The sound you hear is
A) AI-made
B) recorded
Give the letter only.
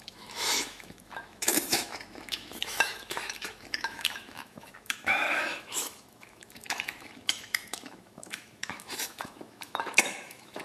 A